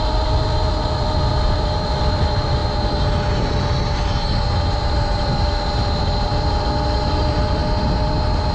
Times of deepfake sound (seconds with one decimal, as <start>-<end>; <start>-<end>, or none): 0.0-2.6; 7.1-7.6